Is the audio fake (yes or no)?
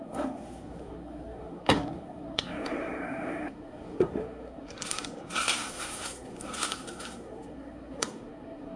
yes